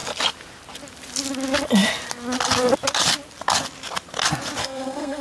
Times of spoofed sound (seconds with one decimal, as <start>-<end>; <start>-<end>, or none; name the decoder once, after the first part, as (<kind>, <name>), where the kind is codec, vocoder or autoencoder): 4.6-5.2 (codec, SNAC)

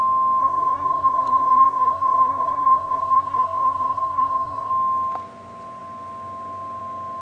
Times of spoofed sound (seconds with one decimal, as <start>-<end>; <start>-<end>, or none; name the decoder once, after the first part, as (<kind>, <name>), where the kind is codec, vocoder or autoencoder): 0.4-4.7 (codec, SNAC)

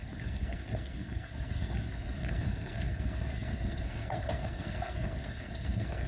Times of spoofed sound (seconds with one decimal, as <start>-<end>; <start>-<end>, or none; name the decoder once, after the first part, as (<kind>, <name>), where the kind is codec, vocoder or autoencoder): 0.0-6.1 (codec, SNAC)

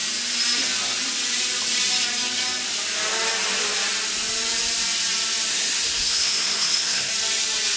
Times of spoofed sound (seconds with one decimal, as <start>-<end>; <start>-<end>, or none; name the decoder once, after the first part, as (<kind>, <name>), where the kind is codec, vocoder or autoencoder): 5.5-7.1 (codec, SNAC)

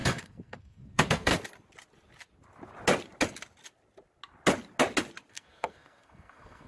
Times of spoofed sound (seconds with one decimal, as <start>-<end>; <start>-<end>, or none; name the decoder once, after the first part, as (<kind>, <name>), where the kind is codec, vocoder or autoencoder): 0.0-1.3 (codec, SNAC); 5.3-6.7

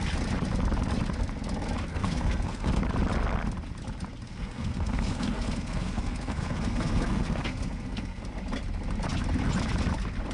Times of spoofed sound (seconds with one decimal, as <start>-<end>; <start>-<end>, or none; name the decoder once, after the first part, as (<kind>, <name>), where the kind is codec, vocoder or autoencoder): 1.9-2.8 (codec, SNAC); 4.3-8.2

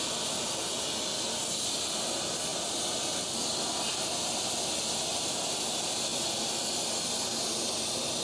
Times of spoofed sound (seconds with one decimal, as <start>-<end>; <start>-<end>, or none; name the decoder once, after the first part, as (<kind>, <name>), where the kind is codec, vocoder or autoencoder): none